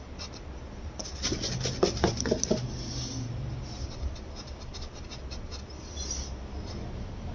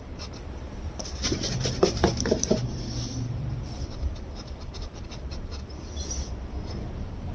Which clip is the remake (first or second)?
second